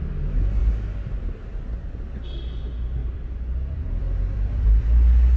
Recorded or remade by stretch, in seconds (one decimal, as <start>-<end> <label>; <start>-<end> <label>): 0.0-3.0 recorded; 3.0-4.8 remade; 4.8-5.4 recorded